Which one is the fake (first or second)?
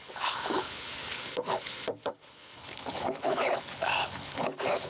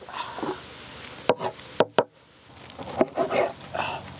first